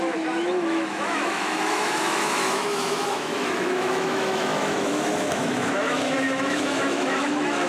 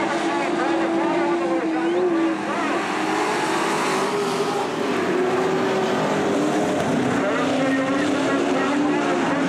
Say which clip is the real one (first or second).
second